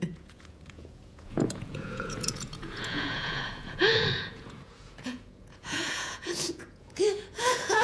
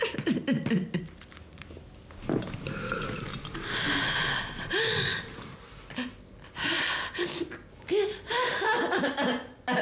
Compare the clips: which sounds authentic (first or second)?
second